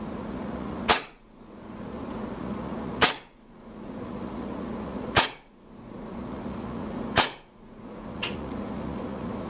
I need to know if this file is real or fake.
fake